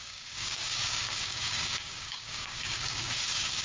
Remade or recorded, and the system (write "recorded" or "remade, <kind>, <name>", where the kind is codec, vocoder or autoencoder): remade, codec, DAC